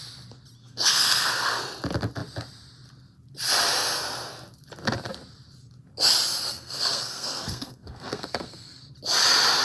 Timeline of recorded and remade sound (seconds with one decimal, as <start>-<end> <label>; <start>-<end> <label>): 0.0-0.6 recorded; 0.6-1.6 remade; 1.6-6.5 recorded; 6.5-8.8 remade; 8.8-9.6 recorded